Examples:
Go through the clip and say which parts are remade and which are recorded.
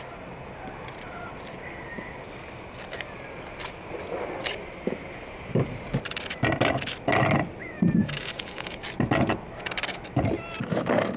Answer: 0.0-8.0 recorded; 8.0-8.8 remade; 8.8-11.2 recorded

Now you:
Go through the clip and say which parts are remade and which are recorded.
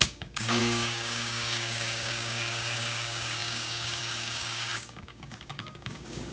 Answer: 0.0-6.3 remade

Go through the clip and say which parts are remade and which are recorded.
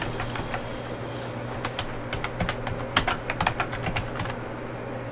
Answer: 0.0-5.1 recorded